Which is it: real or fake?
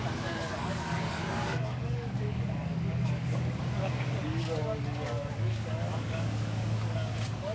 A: fake